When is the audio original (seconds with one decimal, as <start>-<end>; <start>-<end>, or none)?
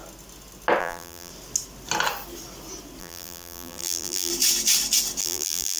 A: 0.0-0.8; 1.3-3.0; 4.3-5.2